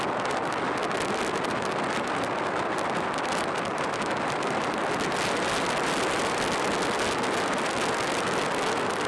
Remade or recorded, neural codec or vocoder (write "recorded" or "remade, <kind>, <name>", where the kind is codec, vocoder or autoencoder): recorded